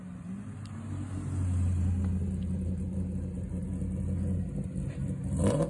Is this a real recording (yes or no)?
yes